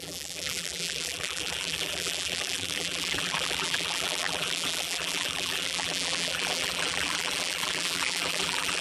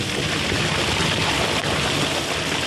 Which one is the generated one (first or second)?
first